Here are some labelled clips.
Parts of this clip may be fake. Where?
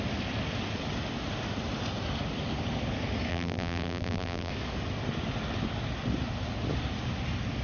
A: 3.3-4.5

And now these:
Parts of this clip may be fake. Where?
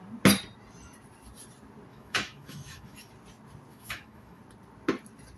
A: 1.9-3.1; 3.7-4.4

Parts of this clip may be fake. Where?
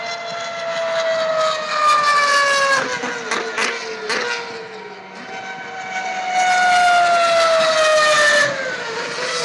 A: none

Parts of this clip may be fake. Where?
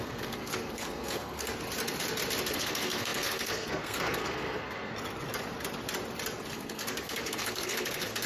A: 0.0-1.5; 2.5-4.9; 6.5-8.3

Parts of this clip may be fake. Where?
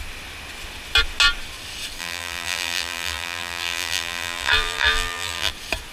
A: 2.0-5.5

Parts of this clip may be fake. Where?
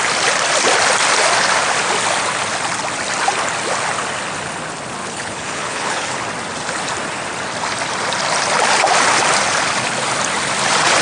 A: 5.0-6.2